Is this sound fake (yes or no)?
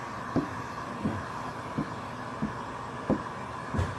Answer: no